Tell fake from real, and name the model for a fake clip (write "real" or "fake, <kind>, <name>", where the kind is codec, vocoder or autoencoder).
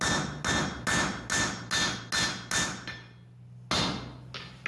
real